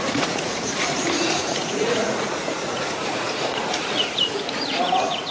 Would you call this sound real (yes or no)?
no